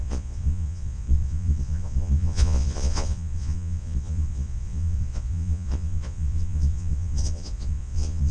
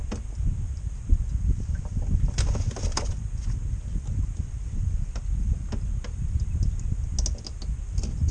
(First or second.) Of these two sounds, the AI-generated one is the first